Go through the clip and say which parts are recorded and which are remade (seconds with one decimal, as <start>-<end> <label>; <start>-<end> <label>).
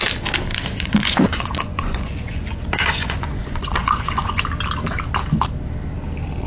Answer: 0.0-0.5 recorded; 0.5-4.4 remade; 4.4-6.5 recorded